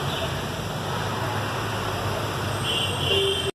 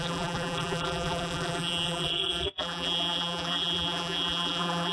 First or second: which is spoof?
second